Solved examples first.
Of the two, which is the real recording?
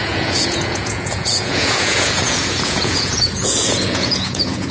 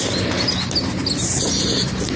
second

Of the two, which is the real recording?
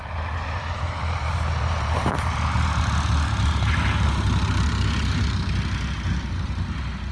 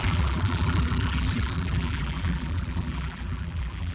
first